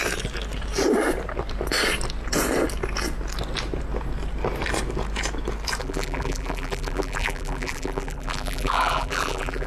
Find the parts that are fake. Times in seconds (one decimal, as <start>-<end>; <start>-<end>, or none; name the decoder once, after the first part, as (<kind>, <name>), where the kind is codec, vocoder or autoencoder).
5.8-9.7 (vocoder, BigVGAN v2)